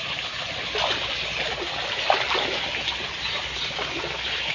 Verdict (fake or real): real